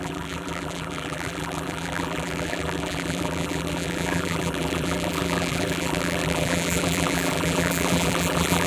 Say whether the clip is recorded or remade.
remade